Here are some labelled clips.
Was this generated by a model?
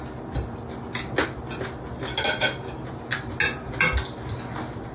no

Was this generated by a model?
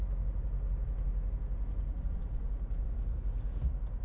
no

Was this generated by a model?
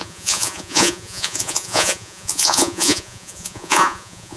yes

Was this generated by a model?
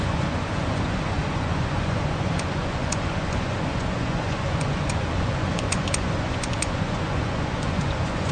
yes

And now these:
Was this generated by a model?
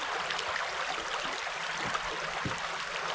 no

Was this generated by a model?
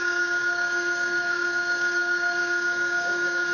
yes